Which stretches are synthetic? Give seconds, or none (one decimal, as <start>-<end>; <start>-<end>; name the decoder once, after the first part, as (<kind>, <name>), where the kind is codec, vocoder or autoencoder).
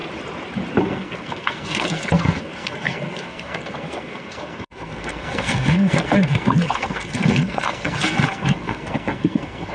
0.8-9.7 (codec, SNAC)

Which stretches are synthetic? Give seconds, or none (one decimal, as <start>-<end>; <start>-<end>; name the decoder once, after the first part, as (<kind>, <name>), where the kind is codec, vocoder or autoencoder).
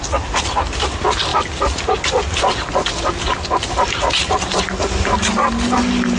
none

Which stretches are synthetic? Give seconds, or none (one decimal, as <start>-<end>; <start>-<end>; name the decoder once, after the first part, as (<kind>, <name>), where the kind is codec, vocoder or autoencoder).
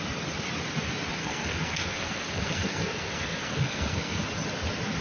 1.2-4.2 (codec, SNAC)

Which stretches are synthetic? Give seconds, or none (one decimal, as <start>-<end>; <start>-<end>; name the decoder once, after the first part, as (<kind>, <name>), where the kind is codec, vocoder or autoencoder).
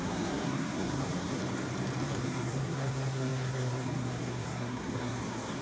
0.0-1.4 (codec, SNAC); 2.0-5.6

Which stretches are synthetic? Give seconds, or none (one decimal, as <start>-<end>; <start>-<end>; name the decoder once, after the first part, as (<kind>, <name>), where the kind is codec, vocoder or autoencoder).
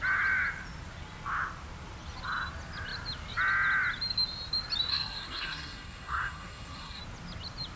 4.9-7.0 (codec, SNAC)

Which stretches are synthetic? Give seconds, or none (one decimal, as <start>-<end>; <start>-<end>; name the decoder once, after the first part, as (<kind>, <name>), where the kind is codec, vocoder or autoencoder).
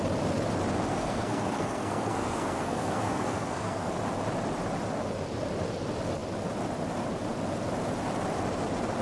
0.9-3.9 (codec, SNAC)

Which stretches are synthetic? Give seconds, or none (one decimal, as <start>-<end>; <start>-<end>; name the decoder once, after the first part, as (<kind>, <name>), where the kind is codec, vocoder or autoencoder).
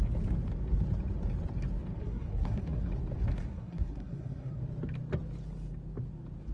2.0-2.9 (codec, SNAC); 3.4-4.6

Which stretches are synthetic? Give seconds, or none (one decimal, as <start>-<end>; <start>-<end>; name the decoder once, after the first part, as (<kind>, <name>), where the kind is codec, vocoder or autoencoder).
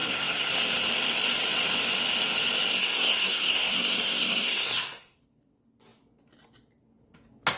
0.0-0.5 (codec, SNAC); 2.7-5.2